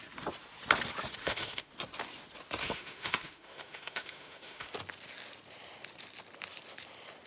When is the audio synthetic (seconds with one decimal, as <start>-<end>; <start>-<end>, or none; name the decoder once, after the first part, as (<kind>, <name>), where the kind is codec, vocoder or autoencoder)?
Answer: 1.2-1.7 (autoencoder, DAC-VAE); 2.6-4.7